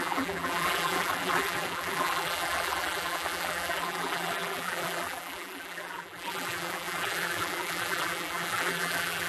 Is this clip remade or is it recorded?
remade